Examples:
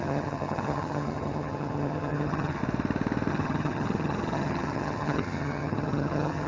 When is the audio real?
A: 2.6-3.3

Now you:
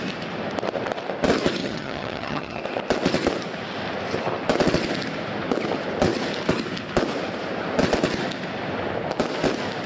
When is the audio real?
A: 0.0-1.6; 2.6-9.9

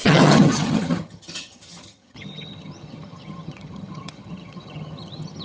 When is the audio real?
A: none

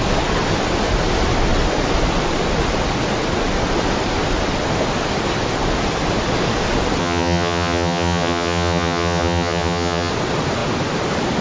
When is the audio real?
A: 0.0-7.0; 10.1-11.4

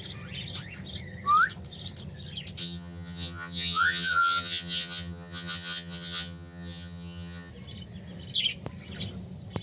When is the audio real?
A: 0.0-2.6; 7.5-9.6

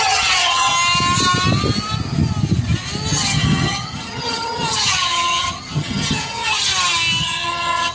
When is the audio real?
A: 0.7-3.1; 6.7-7.2